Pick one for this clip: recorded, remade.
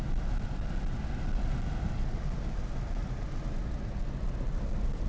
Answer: recorded